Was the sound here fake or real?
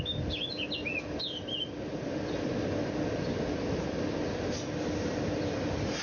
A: real